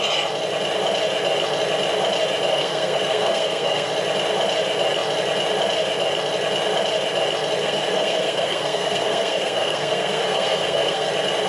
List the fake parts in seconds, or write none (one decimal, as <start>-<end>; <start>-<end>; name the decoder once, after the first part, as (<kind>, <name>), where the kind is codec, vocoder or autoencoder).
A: 2.5-3.9 (codec, SNAC); 7.6-11.1